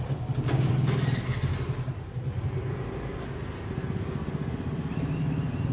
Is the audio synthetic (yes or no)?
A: no